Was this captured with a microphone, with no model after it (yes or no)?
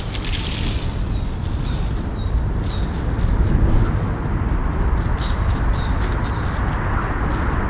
yes